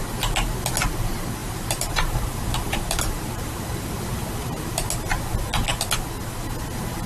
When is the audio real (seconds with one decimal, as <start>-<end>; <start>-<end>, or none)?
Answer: 0.0-1.4; 4.6-7.1